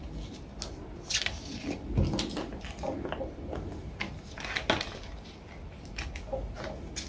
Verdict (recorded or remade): recorded